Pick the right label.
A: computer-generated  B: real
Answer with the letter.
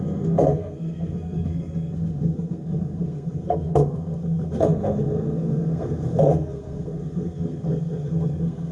A